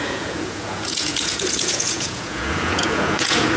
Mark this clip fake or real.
fake